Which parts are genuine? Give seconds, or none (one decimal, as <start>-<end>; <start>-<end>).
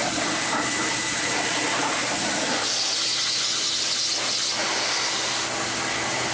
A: 2.8-6.3